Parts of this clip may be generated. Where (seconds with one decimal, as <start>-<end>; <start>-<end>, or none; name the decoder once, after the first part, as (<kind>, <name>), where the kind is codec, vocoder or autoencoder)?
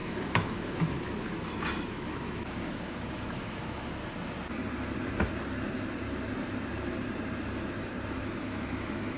0.0-3.9 (autoencoder, DAC-VAE); 8.2-9.2